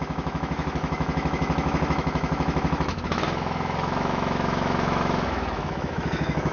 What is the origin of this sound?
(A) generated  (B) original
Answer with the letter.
A